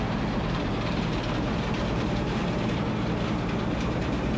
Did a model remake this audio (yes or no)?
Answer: yes